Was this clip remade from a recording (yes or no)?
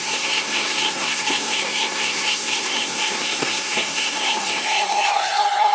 yes